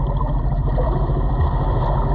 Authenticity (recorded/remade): recorded